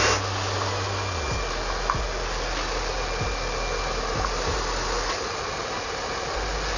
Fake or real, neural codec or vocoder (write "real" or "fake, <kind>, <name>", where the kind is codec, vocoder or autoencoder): real